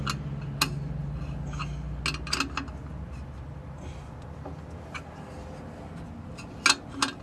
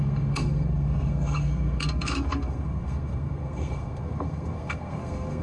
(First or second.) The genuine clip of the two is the first